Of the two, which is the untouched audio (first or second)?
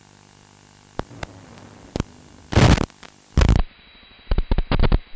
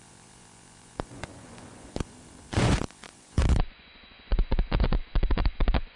first